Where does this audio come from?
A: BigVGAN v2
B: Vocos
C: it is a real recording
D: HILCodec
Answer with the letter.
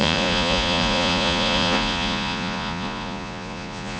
B